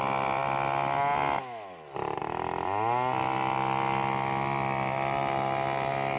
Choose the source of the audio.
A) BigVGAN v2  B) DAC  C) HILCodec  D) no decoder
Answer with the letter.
D